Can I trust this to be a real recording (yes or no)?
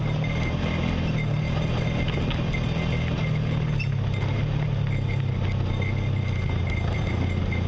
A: yes